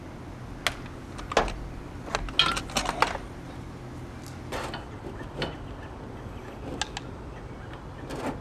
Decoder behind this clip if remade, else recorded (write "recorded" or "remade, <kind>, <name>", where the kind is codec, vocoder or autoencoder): recorded